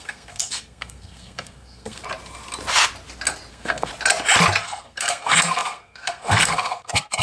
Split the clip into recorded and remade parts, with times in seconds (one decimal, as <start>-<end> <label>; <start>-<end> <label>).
0.0-2.0 remade; 2.0-3.5 recorded; 3.5-3.9 remade; 3.9-4.6 recorded; 4.6-7.2 remade